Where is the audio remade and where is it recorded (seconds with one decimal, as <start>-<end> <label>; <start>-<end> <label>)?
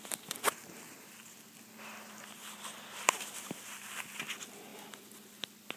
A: 0.0-0.6 recorded; 0.6-1.2 remade; 1.2-2.4 recorded; 2.4-4.0 remade; 4.0-5.8 recorded